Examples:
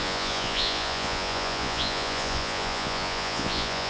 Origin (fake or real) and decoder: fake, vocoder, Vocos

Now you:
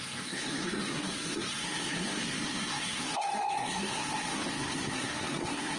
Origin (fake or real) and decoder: fake, codec, SNAC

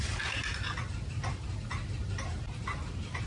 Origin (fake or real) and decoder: real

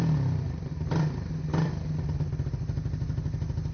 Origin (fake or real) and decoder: real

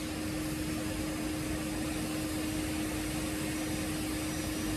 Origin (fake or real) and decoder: real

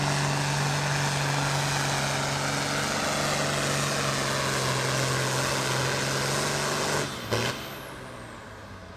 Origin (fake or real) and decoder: real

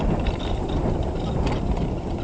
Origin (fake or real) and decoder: real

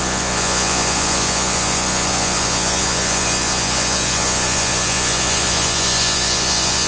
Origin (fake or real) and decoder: fake, vocoder, Vocos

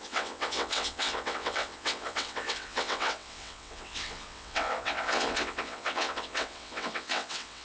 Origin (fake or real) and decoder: fake, vocoder, WaveNeXt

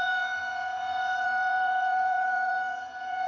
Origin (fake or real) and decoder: fake, vocoder, Vocos